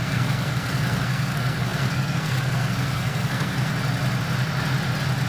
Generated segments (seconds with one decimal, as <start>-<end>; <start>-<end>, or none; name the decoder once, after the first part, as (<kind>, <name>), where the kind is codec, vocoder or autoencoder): 0.0-3.7 (codec, SNAC)